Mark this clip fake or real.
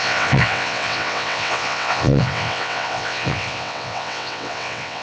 fake